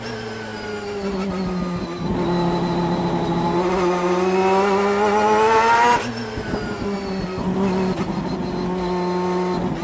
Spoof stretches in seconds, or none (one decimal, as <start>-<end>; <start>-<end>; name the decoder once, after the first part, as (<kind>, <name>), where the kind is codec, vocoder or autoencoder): none